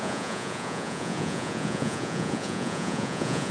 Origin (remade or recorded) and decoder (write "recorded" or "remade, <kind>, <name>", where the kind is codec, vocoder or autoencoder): remade, vocoder, Vocos